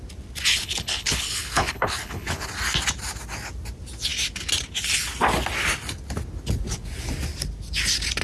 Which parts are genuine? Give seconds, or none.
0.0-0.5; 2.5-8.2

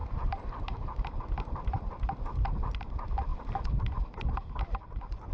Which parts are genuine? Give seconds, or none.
1.1-3.3; 4.3-5.3